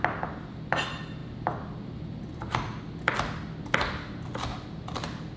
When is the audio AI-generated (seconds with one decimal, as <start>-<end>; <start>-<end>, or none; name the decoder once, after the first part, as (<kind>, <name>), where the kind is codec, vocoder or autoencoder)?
none